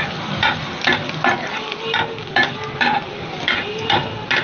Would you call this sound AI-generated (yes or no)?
no